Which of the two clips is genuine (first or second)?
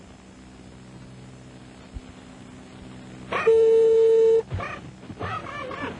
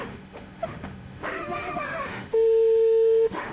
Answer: first